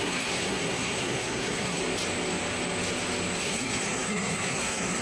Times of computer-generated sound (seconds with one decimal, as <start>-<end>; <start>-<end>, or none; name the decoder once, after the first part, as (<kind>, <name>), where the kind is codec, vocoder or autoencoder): 0.0-1.8 (codec, SNAC); 3.4-5.0